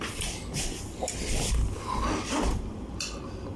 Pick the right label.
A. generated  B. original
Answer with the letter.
B